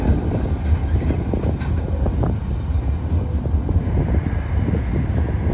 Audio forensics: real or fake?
real